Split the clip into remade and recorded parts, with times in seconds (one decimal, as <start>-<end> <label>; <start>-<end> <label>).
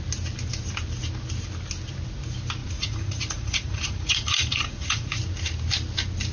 0.0-2.6 recorded; 2.6-5.2 remade; 5.2-6.3 recorded